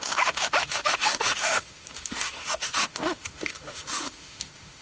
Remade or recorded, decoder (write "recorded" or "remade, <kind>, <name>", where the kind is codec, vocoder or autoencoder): remade, autoencoder, DAC-VAE